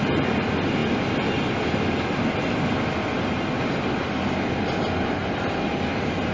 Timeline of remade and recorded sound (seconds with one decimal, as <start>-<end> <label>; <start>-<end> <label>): 0.0-5.2 recorded; 5.2-6.3 remade